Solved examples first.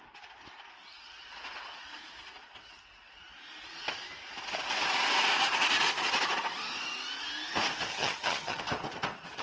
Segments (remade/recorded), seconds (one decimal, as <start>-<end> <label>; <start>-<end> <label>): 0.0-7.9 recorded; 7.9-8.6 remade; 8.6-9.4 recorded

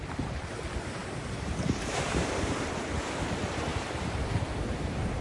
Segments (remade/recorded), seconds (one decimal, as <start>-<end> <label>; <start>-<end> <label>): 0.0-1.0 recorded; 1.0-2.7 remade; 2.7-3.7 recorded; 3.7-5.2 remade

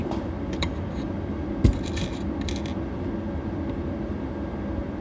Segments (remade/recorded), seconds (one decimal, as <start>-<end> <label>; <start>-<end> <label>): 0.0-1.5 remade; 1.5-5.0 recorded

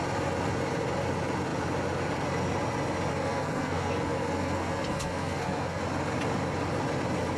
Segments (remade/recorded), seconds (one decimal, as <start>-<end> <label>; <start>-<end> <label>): 0.0-3.1 recorded; 3.1-5.8 remade; 5.8-7.4 recorded

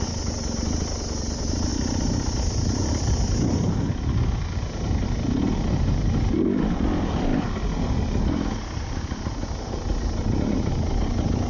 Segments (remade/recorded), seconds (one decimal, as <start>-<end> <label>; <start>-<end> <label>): 0.0-11.5 recorded